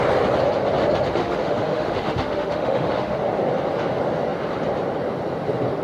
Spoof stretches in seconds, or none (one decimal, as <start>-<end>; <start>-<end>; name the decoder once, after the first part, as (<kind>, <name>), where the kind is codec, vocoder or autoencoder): 1.2-3.2 (autoencoder, DAC-VAE)